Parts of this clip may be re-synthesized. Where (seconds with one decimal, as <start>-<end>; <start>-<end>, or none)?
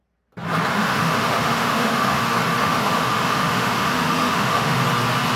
0.7-2.2; 2.6-4.8